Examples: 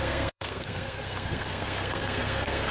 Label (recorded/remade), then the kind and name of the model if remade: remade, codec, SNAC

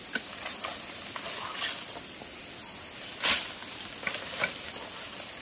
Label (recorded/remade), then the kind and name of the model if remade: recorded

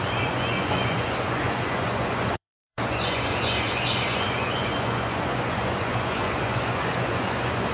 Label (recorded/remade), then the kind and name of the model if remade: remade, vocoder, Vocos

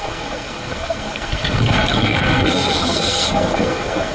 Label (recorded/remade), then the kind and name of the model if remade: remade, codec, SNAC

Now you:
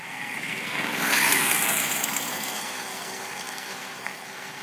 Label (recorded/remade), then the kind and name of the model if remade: remade, codec, SNAC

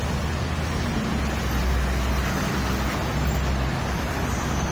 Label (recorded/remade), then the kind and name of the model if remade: recorded